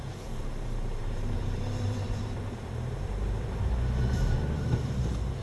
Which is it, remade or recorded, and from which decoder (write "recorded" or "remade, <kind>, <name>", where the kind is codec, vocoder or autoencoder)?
remade, vocoder, BigVGAN v2